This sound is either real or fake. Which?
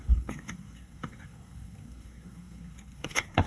fake